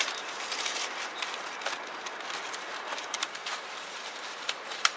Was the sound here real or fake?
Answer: fake